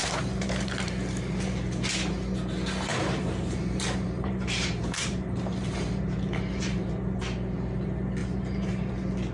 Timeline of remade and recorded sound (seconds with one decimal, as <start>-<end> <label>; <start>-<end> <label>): 0.0-1.3 remade; 1.3-2.9 recorded; 2.9-6.9 remade; 6.9-8.2 recorded; 8.2-8.9 remade; 8.9-9.3 recorded